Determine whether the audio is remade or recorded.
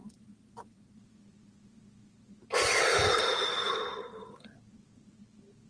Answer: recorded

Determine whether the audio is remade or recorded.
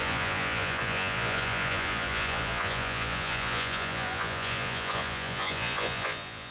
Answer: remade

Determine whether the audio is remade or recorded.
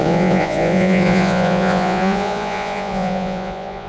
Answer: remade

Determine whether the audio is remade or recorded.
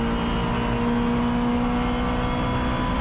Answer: recorded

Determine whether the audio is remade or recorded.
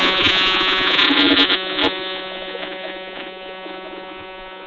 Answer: remade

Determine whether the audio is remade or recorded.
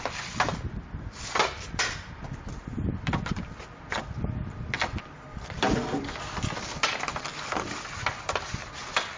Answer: recorded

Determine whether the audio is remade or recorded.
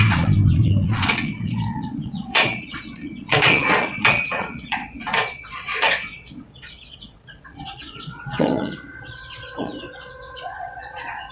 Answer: remade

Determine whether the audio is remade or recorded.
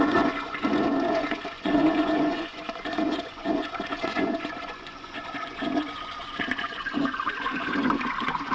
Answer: remade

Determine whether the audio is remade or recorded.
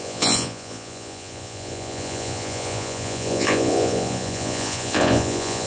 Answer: remade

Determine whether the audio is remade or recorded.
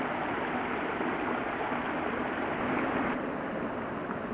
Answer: recorded